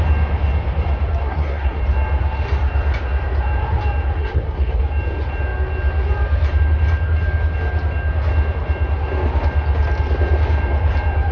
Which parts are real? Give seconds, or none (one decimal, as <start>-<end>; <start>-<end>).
0.0-1.2; 1.8-4.2; 4.8-11.3